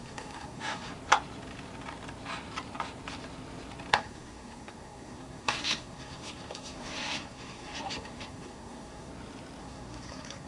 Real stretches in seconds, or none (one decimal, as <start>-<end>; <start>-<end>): 0.9-3.9; 9.1-9.6